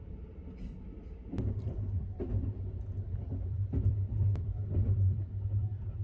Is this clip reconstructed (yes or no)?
yes